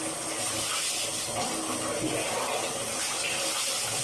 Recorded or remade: recorded